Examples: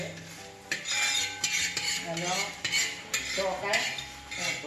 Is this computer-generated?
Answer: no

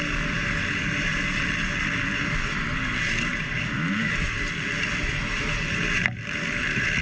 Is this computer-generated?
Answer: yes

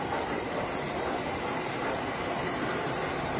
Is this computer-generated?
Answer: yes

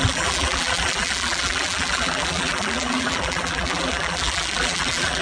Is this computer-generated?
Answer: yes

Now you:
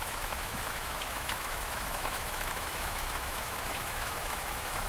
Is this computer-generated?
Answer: yes